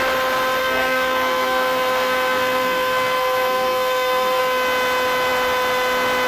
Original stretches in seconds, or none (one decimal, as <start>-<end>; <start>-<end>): 0.0-0.6; 4.4-6.3

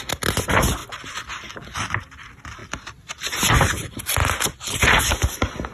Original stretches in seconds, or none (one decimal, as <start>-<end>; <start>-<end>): 0.0-5.7

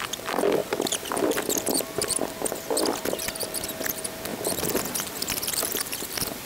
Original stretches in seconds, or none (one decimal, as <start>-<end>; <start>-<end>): 0.0-6.5

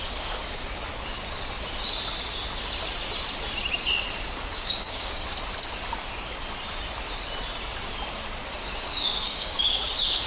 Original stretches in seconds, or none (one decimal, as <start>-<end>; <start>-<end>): 0.4-4.4; 5.2-8.8